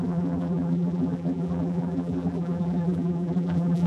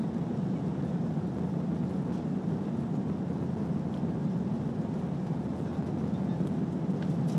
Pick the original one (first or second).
second